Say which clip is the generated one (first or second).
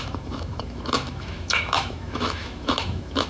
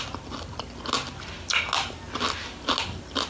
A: first